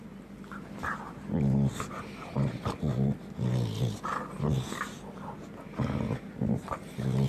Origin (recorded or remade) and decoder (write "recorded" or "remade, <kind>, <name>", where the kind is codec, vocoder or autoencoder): recorded